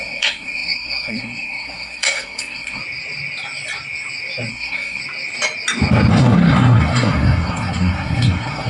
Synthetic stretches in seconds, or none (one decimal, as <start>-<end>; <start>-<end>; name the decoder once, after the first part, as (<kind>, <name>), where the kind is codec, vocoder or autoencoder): 0.0-2.8 (codec, SNAC); 4.5-5.0; 6.1-8.7